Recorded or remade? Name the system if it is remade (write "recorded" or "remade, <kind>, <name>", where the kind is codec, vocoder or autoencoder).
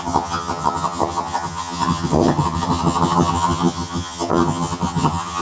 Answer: remade, vocoder, HiFi-GAN